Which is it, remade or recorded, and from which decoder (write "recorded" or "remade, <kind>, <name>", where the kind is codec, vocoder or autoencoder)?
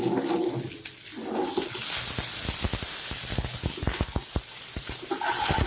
recorded